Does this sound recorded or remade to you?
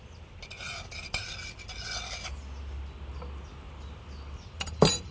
recorded